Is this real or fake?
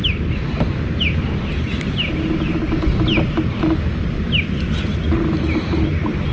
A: real